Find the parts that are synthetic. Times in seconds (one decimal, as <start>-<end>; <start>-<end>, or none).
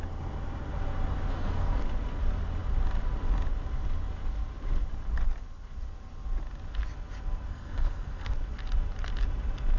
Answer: 1.3-1.8; 7.5-8.3